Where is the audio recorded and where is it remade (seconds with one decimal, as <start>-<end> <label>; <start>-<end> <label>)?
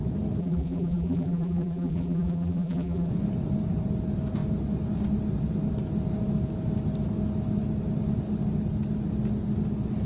0.0-0.4 recorded; 0.4-3.1 remade; 3.1-10.1 recorded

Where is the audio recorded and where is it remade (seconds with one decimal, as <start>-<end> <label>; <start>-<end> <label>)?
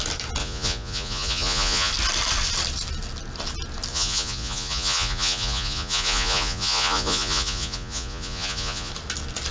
0.0-0.4 recorded; 0.4-1.9 remade; 1.9-3.9 recorded; 3.9-8.9 remade; 8.9-9.5 recorded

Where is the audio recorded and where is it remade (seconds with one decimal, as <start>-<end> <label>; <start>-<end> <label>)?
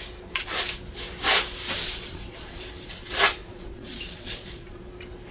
0.0-1.8 recorded; 1.8-2.7 remade; 2.7-3.4 recorded; 3.4-4.8 remade; 4.8-5.3 recorded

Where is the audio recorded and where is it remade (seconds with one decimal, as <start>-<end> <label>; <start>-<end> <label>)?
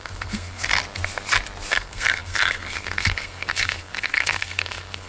0.0-0.7 remade; 0.7-1.7 recorded; 1.7-5.1 remade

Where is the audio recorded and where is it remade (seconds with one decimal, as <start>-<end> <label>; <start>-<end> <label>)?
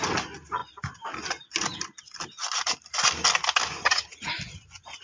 0.0-3.8 recorded; 3.8-4.3 remade; 4.3-5.0 recorded